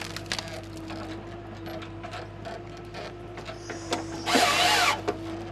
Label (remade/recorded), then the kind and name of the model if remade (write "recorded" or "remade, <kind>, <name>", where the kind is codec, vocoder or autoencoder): recorded